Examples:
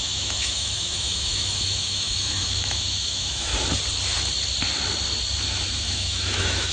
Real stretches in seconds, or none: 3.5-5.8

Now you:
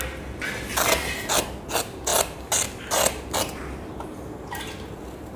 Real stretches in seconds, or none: 0.0-5.4

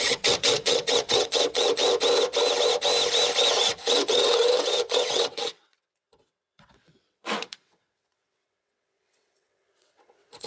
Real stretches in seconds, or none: 1.8-3.6

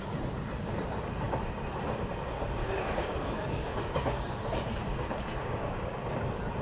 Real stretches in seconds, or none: 0.0-2.6; 4.4-4.9; 6.0-6.6

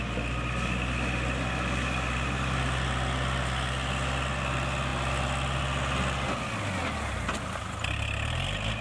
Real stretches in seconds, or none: 0.0-8.8